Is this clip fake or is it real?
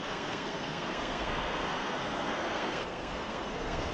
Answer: fake